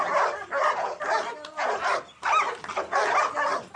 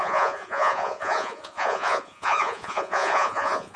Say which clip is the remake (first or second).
second